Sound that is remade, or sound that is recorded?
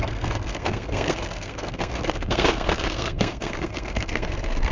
remade